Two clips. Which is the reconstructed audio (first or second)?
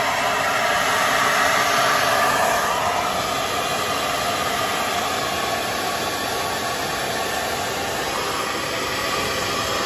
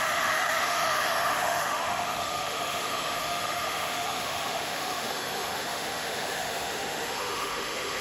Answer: second